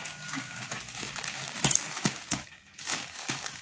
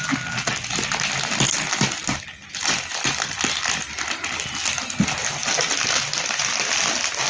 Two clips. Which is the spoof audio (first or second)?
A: first